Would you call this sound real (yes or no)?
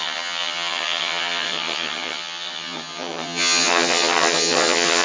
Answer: no